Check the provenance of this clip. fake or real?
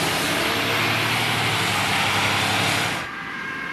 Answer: real